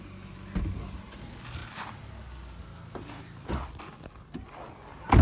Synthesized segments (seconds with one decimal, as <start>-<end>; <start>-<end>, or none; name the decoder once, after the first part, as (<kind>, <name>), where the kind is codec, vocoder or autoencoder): none